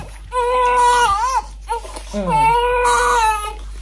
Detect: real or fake real